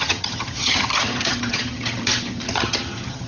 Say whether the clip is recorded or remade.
remade